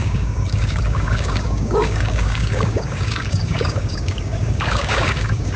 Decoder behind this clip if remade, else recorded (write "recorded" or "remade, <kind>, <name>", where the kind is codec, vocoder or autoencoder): remade, codec, DAC